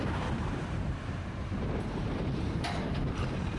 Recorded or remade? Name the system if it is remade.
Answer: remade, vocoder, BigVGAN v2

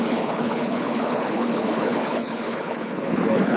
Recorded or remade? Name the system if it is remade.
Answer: remade, codec, HILCodec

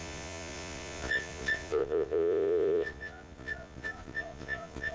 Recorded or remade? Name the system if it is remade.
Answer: remade, vocoder, Vocos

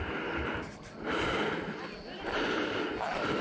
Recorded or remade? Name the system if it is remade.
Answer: recorded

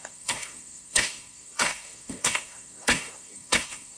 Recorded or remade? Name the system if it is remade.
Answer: remade, codec, SNAC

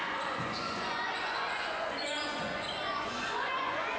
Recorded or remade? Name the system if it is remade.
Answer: remade, vocoder, Vocos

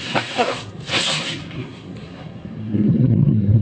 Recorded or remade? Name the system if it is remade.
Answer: remade, codec, SNAC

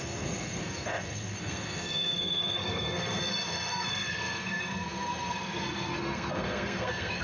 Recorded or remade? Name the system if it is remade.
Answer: remade, codec, SNAC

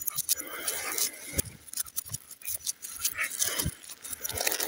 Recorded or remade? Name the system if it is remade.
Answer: recorded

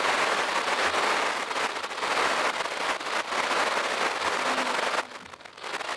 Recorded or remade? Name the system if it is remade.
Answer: recorded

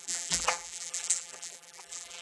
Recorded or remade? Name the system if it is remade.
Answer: remade, vocoder, BigVGAN v2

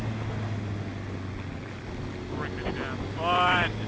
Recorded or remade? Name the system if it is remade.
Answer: recorded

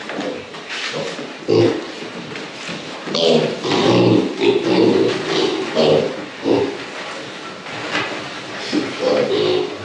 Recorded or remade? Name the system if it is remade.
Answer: recorded